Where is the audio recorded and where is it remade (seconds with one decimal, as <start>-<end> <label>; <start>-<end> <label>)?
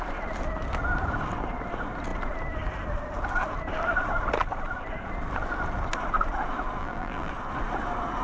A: 0.0-6.8 recorded; 6.8-7.3 remade; 7.3-8.2 recorded